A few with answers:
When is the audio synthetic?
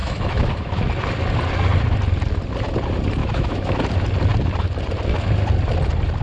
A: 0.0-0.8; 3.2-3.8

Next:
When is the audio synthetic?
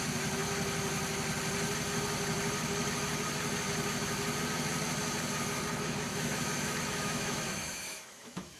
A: 6.1-8.6